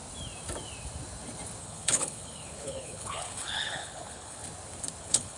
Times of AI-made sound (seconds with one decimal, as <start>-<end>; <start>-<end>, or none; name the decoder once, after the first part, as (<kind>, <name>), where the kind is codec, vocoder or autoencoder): 1.6-4.4 (codec, HILCodec); 5.0-5.4